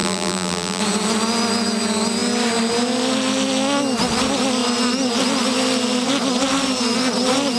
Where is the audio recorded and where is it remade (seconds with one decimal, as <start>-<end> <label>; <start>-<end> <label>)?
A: 0.0-0.8 remade; 0.8-7.6 recorded